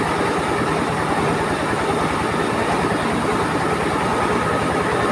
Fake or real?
real